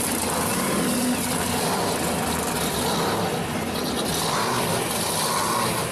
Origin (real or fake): real